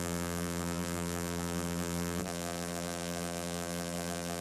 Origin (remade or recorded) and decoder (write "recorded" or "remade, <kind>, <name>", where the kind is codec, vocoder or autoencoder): remade, vocoder, BigVGAN v2